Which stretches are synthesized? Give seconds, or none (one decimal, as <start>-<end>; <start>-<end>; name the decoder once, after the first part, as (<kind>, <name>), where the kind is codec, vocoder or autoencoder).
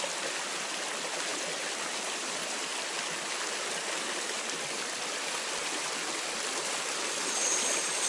none